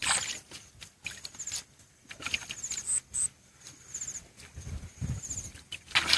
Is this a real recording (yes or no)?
yes